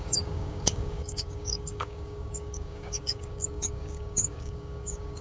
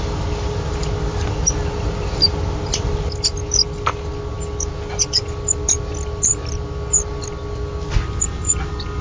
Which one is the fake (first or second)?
first